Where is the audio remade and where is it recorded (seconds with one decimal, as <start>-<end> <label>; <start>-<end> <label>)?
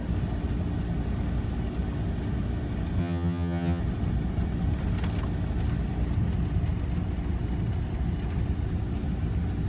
0.0-3.0 recorded; 3.0-3.8 remade; 3.8-9.7 recorded